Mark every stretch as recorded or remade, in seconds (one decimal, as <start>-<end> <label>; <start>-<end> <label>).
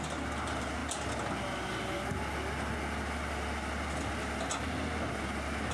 0.0-5.7 recorded